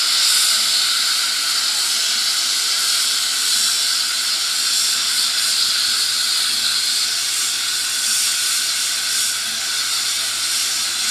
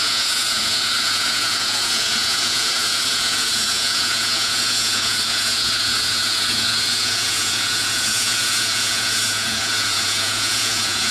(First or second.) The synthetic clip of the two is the second